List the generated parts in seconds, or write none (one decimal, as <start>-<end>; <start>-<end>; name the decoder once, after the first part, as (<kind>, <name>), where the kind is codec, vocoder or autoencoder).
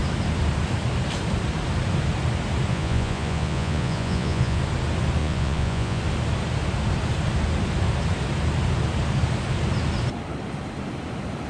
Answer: 2.7-4.6 (vocoder, Vocos); 5.2-6.0